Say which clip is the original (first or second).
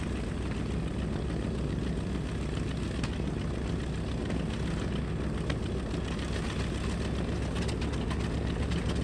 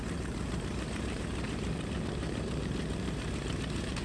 first